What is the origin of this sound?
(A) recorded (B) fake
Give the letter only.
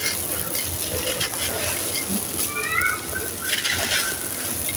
A